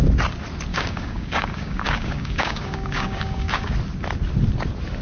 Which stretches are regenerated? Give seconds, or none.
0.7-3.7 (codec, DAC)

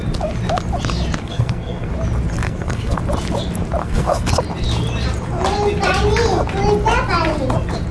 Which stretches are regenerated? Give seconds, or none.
1.2-1.9 (codec, SNAC); 2.4-3.0; 3.8-4.3

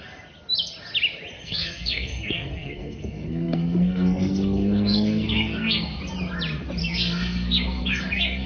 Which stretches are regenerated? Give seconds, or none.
1.4-6.0 (codec, SNAC); 6.8-8.5